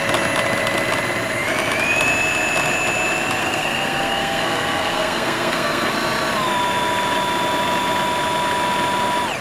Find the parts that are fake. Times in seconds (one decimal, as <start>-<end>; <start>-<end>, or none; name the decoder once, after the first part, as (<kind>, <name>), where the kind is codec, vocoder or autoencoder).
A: 3.4-5.9 (codec, SNAC)